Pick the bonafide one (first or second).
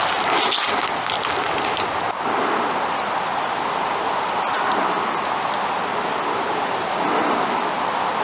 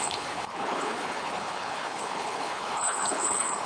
first